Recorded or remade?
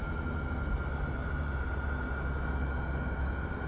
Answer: recorded